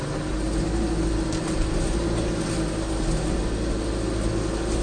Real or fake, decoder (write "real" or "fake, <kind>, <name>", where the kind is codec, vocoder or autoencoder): real